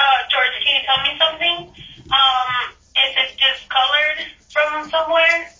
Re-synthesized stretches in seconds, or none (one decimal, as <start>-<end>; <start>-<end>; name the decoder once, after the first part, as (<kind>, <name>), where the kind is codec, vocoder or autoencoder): 0.0-1.0 (vocoder, BigVGAN v2); 1.7-2.4; 4.9-5.6

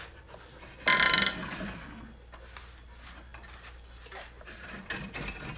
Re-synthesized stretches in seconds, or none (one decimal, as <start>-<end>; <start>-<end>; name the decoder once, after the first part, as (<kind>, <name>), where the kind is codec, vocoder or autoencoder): 3.3-5.1 (vocoder, BigVGAN v2)

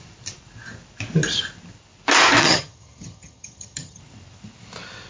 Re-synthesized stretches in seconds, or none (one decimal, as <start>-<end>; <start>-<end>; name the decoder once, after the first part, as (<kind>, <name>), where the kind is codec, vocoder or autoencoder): 2.4-4.0 (vocoder, HiFi-GAN)

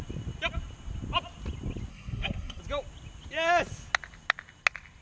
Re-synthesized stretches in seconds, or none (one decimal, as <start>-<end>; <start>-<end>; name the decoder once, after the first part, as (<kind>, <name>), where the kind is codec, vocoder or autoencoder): 1.9-2.6 (codec, SNAC)

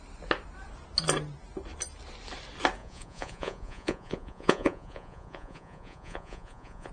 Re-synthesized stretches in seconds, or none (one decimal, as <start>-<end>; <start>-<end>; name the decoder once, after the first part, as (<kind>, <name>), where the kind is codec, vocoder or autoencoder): 2.8-6.9 (vocoder, Vocos)

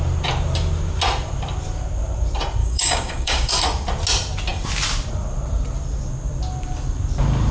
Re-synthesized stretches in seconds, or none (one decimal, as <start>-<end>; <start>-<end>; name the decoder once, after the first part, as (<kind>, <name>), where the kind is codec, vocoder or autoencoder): 2.6-3.5 (codec, DAC)

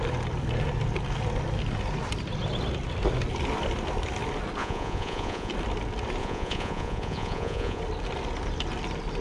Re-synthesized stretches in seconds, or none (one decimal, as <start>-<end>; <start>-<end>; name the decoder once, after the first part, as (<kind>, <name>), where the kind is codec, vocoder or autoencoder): 4.6-5.5 (vocoder, Vocos); 6.2-7.8

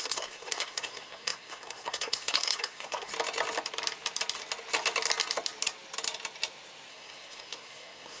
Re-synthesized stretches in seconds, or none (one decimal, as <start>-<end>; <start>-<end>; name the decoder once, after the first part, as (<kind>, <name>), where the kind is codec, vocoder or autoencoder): 0.0-3.1 (codec, SNAC); 6.9-8.2